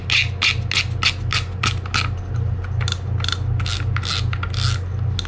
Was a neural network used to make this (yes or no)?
no